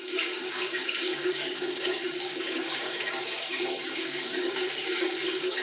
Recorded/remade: remade